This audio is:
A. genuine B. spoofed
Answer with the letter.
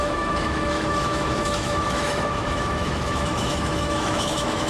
B